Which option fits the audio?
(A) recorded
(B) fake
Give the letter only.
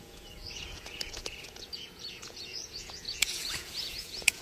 B